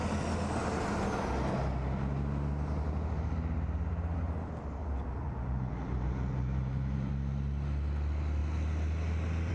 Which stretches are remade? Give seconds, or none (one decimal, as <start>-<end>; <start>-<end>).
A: 4.8-7.1